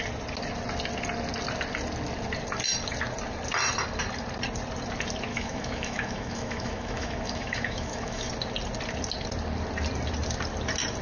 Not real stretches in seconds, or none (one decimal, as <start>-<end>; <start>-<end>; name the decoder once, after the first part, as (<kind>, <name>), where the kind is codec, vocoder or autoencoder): 5.3-8.3 (autoencoder, DAC-VAE)